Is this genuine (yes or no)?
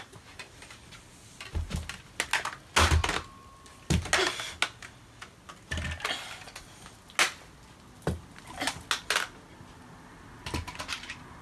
yes